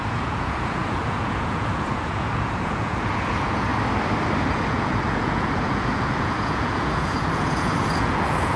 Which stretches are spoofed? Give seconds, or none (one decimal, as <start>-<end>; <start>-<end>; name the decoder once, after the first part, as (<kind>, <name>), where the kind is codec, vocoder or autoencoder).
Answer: 0.0-3.7 (vocoder, Vocos); 4.5-8.6